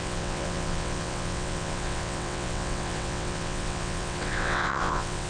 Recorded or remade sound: remade